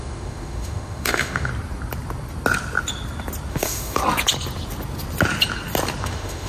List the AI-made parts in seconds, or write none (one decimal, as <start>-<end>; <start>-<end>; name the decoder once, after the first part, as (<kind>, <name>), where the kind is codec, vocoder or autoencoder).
0.0-1.5 (autoencoder, DAC-VAE); 3.5-4.0; 6.0-6.5